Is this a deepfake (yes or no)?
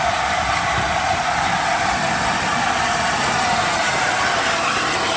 no